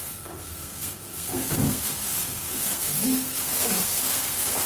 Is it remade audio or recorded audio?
remade